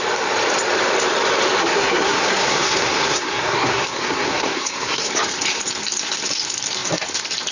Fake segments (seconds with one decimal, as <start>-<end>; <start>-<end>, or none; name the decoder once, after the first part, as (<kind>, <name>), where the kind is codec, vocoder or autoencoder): 1.6-5.1 (codec, SNAC)